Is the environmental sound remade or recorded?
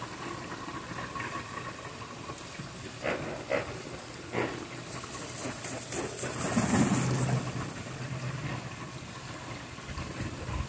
recorded